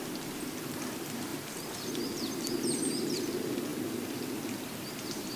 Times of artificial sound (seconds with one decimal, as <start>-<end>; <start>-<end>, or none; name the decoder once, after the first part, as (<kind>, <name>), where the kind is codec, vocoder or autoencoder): none